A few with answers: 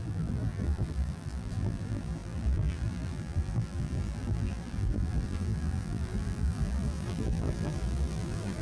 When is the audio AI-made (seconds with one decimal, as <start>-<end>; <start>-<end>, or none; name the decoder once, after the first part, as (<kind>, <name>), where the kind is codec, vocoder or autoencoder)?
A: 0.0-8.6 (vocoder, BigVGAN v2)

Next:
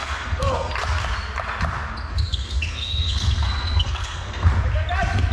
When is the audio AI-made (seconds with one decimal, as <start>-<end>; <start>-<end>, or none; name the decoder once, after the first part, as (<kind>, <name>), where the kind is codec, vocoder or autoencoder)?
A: 0.0-0.7 (codec, SNAC); 2.1-4.5

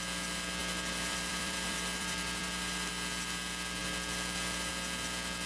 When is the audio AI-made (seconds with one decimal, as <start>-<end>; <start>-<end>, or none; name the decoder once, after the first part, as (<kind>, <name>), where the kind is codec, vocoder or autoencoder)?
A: 0.6-2.9 (vocoder, BigVGAN v2); 3.8-4.7

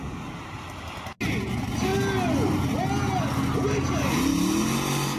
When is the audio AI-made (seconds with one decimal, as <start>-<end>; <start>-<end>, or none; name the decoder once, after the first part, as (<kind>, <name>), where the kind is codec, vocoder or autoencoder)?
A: none

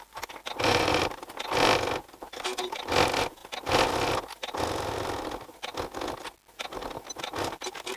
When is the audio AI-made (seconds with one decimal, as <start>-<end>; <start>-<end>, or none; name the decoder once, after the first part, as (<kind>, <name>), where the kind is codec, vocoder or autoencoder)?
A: none

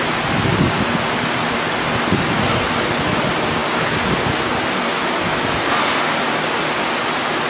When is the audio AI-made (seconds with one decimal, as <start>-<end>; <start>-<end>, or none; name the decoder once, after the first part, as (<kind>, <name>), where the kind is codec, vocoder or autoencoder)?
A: none

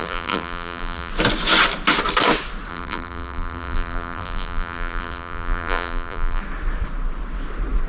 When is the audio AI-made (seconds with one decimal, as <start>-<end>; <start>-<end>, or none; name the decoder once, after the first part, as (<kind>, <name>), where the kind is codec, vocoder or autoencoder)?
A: 0.0-1.1 (vocoder, BigVGAN v2); 2.7-6.4